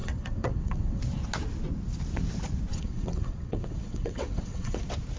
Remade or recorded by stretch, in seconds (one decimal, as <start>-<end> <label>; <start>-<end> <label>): 0.0-1.0 remade; 1.0-2.7 recorded; 2.7-4.8 remade; 4.8-5.2 recorded